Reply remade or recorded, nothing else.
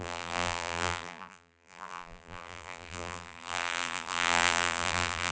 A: remade